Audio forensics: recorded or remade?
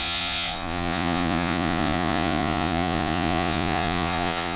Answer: remade